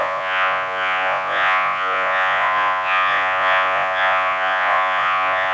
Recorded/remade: remade